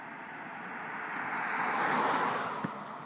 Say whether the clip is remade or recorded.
recorded